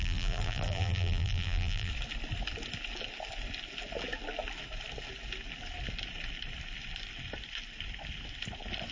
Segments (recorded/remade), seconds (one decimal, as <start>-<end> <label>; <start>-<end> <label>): 0.0-1.9 remade; 1.9-8.9 recorded